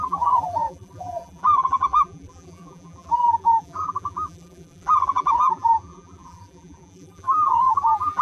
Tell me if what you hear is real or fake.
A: fake